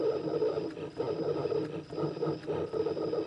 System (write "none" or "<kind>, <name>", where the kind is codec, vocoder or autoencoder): none